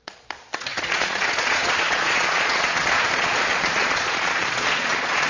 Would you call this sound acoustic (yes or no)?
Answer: no